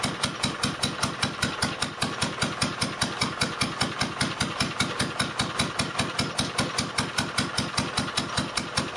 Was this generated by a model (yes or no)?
no